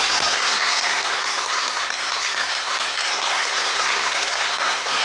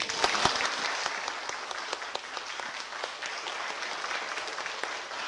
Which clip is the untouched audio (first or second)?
second